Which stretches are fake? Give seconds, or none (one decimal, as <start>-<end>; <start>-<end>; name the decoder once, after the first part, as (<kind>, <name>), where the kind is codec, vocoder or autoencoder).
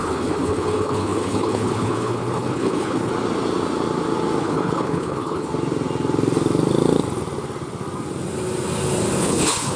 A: 0.0-3.1 (codec, HILCodec); 4.4-5.5; 9.2-9.8